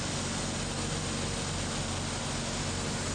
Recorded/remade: recorded